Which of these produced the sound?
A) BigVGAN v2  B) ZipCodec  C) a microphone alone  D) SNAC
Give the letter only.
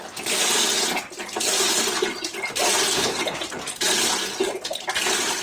C